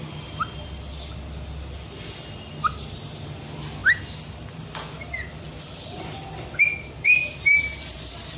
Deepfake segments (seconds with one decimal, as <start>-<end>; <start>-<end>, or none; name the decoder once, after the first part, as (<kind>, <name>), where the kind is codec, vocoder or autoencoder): none